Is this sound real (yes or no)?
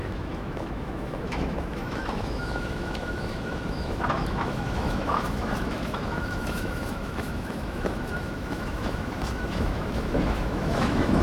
no